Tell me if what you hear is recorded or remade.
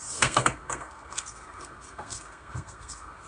remade